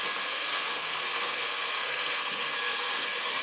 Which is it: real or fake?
fake